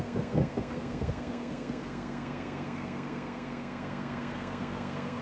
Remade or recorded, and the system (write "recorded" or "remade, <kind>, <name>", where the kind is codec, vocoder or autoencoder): remade, codec, SNAC